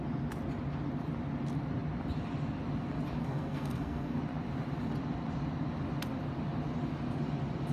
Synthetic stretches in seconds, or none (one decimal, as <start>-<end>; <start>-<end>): 3.2-4.2